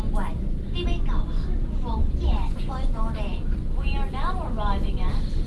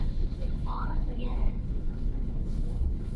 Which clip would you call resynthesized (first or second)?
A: second